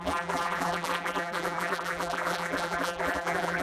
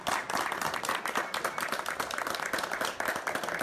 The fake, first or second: first